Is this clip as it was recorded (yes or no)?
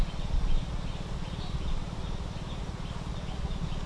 yes